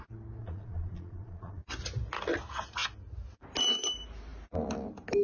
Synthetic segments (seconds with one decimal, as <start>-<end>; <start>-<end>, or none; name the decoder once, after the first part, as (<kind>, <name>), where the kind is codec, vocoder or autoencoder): 0.4-1.6 (vocoder, Vocos)